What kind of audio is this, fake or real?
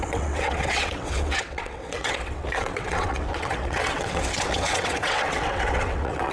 fake